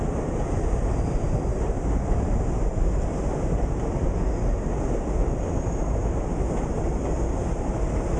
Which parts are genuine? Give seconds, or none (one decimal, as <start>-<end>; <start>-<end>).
0.0-1.5; 4.1-8.2